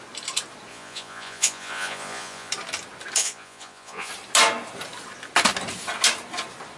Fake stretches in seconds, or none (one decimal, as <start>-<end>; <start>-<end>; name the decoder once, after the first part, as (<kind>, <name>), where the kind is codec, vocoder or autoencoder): 0.7-2.5 (vocoder, Vocos); 3.2-4.1